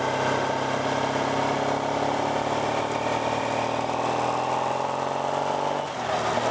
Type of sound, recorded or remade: recorded